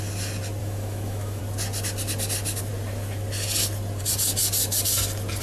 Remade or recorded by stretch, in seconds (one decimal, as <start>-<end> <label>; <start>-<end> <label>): 0.0-0.6 recorded; 0.6-1.4 remade; 1.4-5.4 recorded